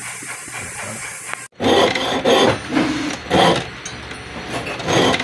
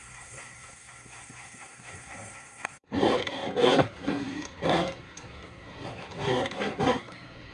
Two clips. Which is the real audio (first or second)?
first